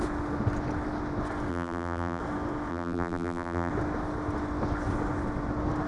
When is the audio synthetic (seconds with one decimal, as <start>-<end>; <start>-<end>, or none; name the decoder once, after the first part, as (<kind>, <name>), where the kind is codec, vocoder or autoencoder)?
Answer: 1.5-2.2 (vocoder, BigVGAN v2); 2.7-3.7

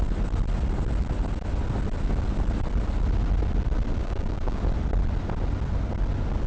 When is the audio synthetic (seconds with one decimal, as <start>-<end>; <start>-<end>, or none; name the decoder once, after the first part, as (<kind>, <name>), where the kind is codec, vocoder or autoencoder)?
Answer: 4.0-4.6 (codec, DAC)

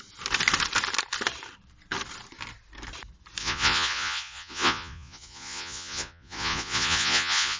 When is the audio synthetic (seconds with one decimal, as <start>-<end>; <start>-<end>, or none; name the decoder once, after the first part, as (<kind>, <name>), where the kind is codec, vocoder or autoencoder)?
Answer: 3.4-7.6 (vocoder, Vocos)

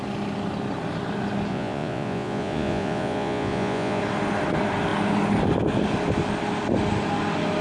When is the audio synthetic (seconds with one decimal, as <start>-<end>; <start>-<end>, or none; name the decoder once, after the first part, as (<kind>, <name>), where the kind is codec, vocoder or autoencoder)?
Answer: 1.5-4.0 (vocoder, Vocos)

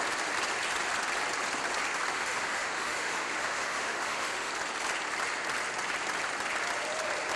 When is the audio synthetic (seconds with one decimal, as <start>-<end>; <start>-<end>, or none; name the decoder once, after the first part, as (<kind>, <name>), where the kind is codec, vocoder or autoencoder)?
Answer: 2.1-4.5 (autoencoder, DAC-VAE)

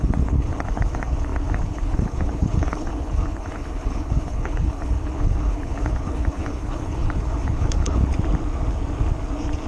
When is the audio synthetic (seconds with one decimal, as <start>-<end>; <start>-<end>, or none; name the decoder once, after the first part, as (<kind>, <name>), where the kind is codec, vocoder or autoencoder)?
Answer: 0.0-8.1 (codec, HILCodec)